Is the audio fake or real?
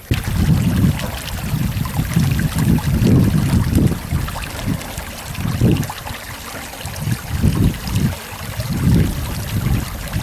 real